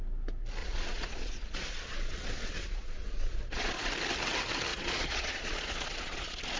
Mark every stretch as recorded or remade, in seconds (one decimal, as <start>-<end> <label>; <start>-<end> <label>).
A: 0.0-0.6 recorded; 0.6-3.9 remade; 3.9-4.7 recorded; 4.7-6.6 remade